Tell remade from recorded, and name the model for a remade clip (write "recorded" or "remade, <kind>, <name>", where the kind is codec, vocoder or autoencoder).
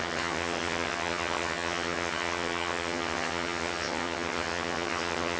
remade, vocoder, HiFi-GAN